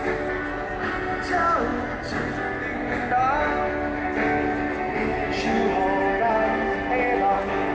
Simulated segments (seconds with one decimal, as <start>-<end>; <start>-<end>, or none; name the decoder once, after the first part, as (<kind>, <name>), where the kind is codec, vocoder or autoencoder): none